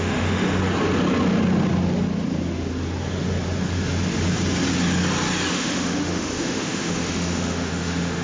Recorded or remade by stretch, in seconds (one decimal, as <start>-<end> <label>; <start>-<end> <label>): 0.0-0.6 remade; 0.6-5.5 recorded; 5.5-8.2 remade